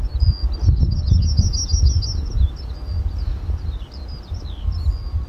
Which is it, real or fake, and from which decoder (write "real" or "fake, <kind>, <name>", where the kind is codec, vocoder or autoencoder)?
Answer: real